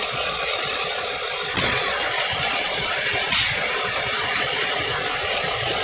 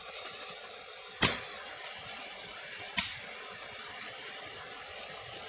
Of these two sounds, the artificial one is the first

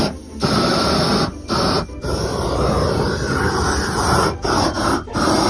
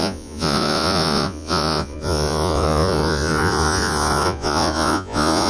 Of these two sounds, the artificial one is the second